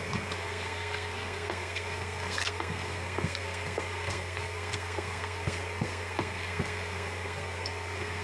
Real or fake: fake